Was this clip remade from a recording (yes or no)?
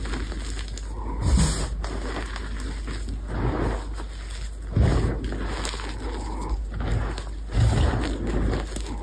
no